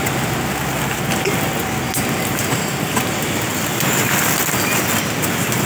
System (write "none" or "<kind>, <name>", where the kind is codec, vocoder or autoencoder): none